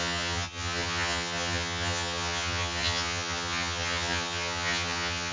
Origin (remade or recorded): remade